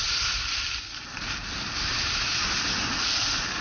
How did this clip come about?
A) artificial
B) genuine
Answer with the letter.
B